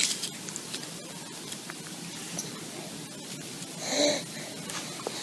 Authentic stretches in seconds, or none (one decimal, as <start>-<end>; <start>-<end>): 0.0-5.2